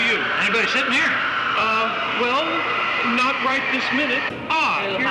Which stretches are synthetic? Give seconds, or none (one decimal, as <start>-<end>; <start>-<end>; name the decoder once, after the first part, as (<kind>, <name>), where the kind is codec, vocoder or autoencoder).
3.1-5.1 (vocoder, BigVGAN v2)